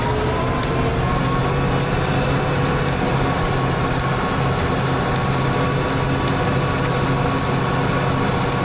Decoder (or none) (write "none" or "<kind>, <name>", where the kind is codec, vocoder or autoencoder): none